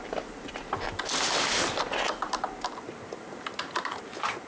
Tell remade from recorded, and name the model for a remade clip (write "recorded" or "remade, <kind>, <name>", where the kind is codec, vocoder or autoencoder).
recorded